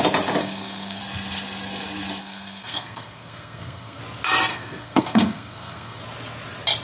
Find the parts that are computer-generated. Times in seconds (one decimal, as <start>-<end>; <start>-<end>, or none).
0.4-1.0; 2.2-4.0; 4.5-6.0